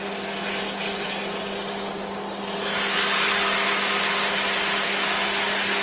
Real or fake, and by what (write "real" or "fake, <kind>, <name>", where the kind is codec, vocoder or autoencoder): real